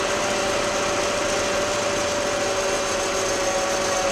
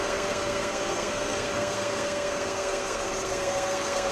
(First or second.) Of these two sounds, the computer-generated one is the second